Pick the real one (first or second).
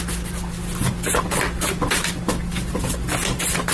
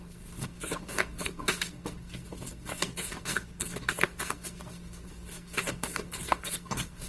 first